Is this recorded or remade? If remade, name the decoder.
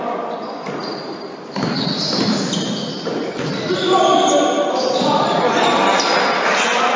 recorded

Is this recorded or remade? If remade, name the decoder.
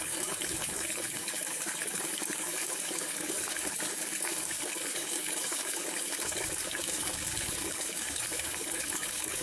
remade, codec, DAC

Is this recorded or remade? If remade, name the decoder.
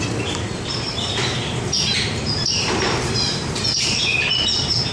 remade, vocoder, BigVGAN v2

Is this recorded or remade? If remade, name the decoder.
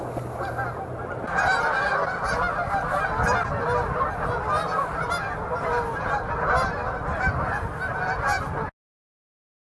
recorded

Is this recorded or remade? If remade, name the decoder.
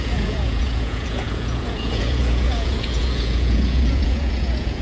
remade, vocoder, Vocos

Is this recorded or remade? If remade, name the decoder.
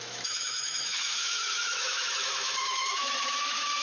remade, autoencoder, DAC-VAE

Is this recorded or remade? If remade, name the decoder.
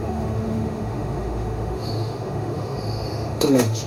remade, autoencoder, DAC-VAE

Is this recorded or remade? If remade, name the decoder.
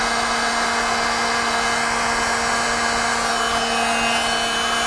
recorded